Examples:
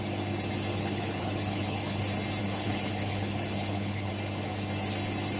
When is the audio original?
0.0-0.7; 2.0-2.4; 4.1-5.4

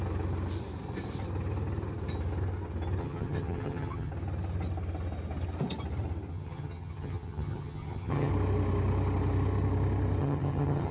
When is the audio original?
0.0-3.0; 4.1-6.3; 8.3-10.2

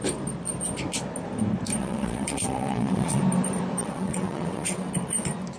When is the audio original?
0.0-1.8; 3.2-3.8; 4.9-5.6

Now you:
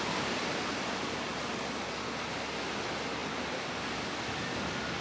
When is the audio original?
0.0-5.0

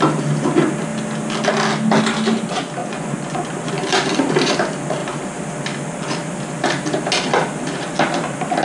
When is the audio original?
0.0-2.8; 3.7-8.6

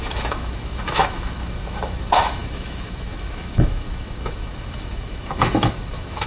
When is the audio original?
none

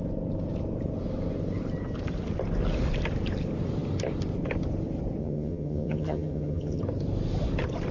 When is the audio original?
0.0-5.2; 6.8-7.9

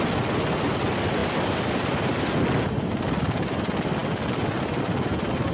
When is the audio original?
0.0-5.5